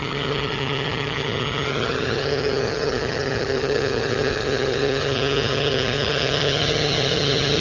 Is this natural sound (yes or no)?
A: no